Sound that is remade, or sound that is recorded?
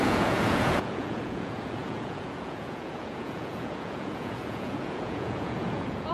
remade